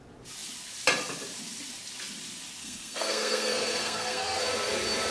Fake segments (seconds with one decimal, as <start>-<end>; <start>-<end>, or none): 2.6-4.4